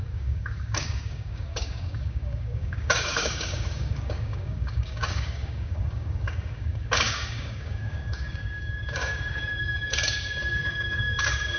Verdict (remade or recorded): remade